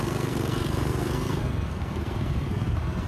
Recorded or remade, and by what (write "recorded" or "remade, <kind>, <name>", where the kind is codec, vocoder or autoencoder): remade, codec, SNAC